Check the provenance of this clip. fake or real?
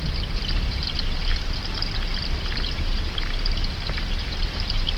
real